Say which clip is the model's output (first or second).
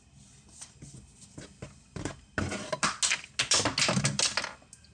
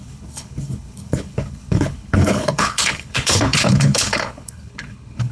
second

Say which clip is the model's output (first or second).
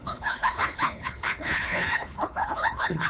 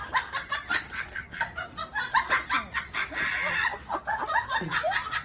first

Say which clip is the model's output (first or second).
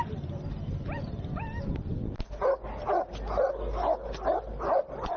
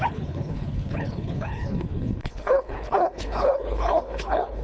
second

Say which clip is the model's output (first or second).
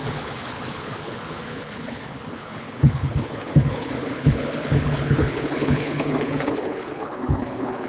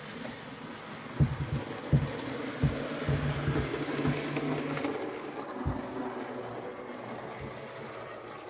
first